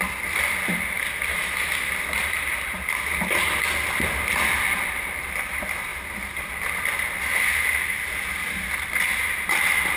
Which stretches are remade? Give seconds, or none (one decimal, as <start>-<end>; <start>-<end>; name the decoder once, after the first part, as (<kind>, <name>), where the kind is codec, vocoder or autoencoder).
1.3-1.9 (autoencoder, DAC-VAE)